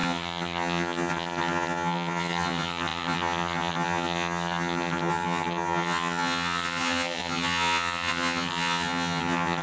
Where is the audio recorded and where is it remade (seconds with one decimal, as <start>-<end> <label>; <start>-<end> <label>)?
0.0-9.6 remade